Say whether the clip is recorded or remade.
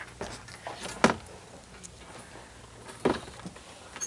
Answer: recorded